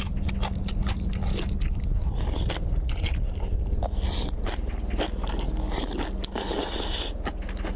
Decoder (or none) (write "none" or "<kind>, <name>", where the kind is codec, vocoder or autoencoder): none